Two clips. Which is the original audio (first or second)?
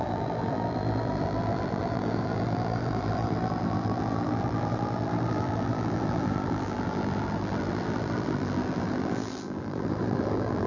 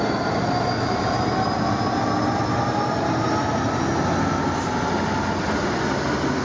second